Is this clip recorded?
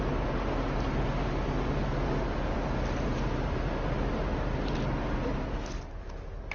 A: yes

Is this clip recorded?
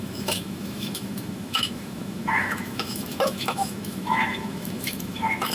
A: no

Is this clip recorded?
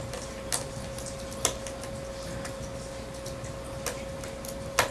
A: yes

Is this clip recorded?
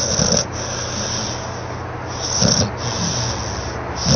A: yes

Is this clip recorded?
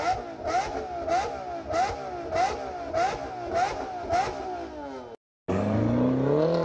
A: yes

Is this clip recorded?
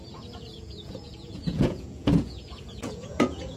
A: no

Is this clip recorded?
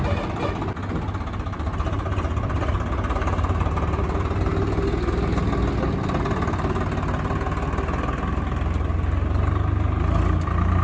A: yes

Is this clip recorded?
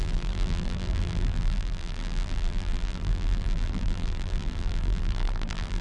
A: no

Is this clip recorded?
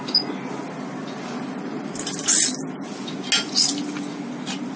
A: yes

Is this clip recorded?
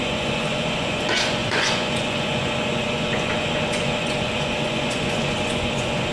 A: no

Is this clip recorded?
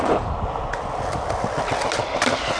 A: yes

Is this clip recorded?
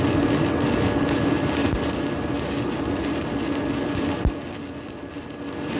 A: yes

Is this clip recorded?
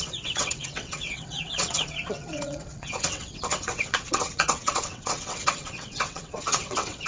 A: no